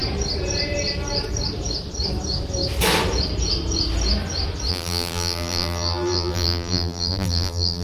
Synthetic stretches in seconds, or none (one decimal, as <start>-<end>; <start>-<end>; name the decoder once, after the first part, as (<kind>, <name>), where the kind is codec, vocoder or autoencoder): 4.7-7.8 (vocoder, BigVGAN v2)